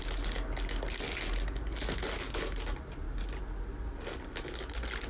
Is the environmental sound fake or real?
real